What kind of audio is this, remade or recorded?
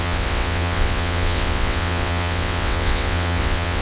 remade